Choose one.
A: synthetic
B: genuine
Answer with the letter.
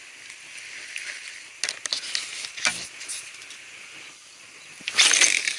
B